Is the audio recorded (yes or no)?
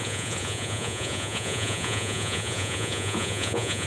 no